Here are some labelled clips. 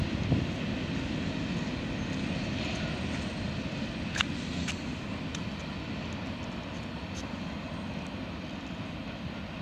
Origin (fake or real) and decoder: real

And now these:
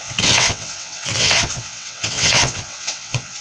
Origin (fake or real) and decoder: fake, vocoder, WaveNeXt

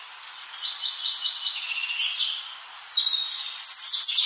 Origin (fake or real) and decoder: real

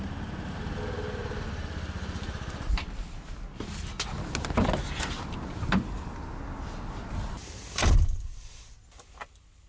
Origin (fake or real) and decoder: real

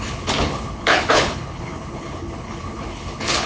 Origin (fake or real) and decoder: fake, codec, HILCodec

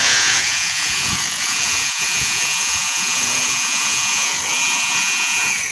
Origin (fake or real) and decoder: fake, vocoder, Vocos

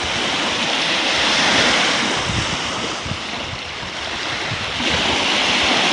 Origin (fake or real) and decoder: real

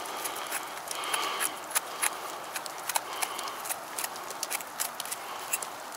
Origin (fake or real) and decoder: real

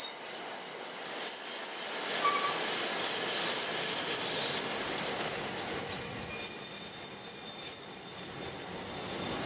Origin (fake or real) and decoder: real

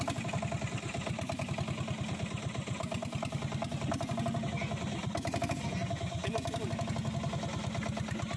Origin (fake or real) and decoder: real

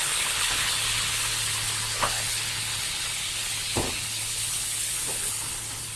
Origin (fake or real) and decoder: fake, codec, HILCodec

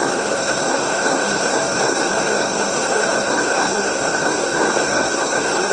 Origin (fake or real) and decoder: fake, codec, SNAC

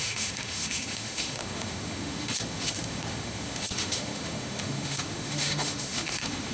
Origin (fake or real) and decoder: fake, autoencoder, DAC-VAE